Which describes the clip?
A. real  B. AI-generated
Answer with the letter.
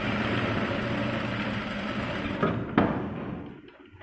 A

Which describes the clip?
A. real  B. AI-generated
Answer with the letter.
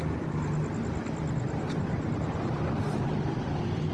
A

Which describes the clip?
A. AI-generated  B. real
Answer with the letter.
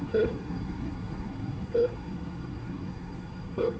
A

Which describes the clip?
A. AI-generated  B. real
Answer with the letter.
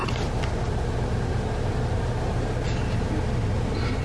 B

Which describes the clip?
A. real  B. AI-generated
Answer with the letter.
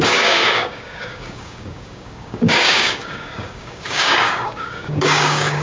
B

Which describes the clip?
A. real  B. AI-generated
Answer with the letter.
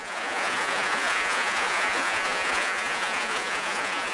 B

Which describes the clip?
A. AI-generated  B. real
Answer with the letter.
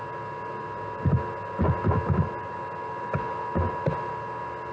B